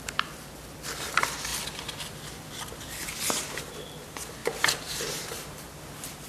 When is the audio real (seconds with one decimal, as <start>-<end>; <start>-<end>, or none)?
0.0-4.4; 5.7-6.3